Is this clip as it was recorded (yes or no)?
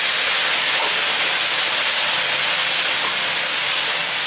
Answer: yes